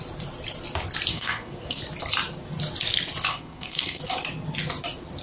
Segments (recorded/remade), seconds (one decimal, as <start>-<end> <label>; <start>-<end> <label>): 0.0-1.1 recorded; 1.1-1.8 remade; 1.8-3.3 recorded; 3.3-4.0 remade; 4.0-5.2 recorded